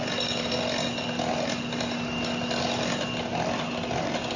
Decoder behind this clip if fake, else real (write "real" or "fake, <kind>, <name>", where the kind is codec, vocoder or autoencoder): real